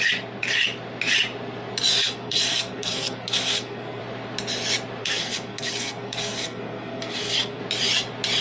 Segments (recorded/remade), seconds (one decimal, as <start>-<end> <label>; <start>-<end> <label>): 0.0-1.9 recorded; 1.9-4.0 remade; 4.0-5.0 recorded; 5.0-7.6 remade; 7.6-8.4 recorded